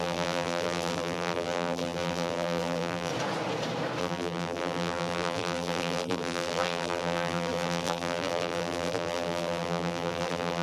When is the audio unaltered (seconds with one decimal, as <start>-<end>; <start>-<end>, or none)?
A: 3.1-4.0